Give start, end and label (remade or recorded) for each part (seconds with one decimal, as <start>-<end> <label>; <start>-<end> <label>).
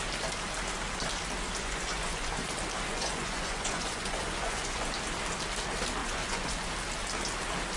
0.0-1.6 recorded; 1.6-2.3 remade; 2.3-2.9 recorded; 2.9-4.9 remade; 4.9-6.0 recorded; 6.0-6.7 remade; 6.7-7.8 recorded